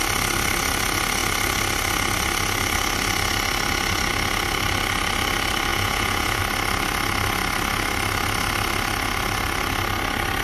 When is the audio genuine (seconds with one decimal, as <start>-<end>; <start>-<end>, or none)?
0.0-5.7; 6.4-10.4